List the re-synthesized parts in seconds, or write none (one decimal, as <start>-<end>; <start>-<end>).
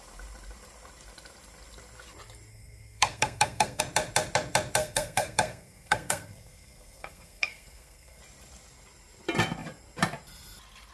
2.5-3.8; 4.8-8.2